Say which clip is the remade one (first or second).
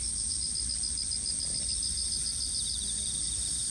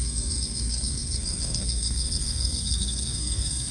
second